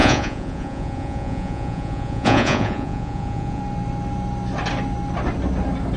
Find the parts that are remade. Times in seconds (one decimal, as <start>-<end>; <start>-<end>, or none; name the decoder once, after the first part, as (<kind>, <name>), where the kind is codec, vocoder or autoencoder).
0.0-3.6 (vocoder, Vocos)